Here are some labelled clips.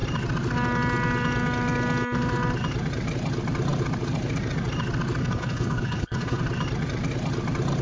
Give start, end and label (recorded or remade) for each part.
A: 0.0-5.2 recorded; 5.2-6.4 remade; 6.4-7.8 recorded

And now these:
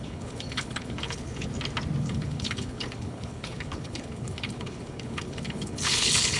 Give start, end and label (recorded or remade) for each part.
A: 0.0-1.5 remade; 1.5-2.0 recorded; 2.0-6.4 remade

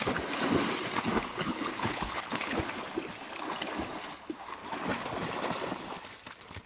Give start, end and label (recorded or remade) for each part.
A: 0.0-1.3 recorded; 1.3-2.6 remade; 2.6-6.7 recorded